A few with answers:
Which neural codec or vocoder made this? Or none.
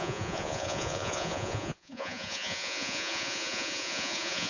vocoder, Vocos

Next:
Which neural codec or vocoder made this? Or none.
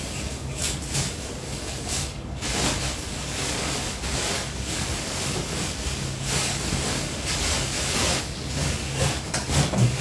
codec, DAC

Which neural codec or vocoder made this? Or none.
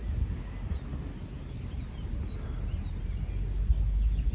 none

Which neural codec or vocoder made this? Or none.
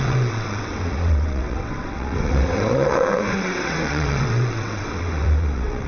vocoder, WaveNeXt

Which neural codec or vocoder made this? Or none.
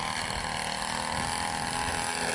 none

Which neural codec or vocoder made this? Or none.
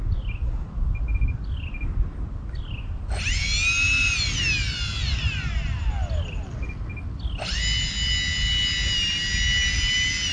none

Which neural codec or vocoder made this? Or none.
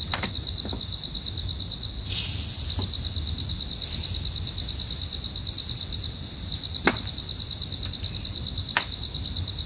none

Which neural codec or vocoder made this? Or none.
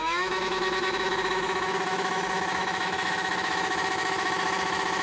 autoencoder, DAC-VAE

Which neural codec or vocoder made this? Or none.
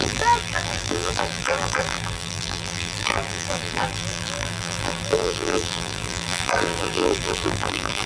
vocoder, BigVGAN v2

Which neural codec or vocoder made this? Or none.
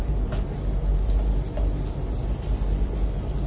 none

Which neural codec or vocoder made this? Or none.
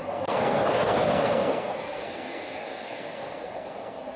codec, SNAC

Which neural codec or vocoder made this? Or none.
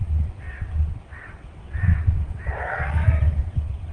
vocoder, WaveNeXt